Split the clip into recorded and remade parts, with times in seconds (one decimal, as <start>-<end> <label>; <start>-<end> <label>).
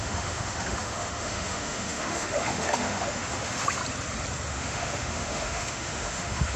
0.0-3.8 remade; 3.8-4.5 recorded; 4.5-6.6 remade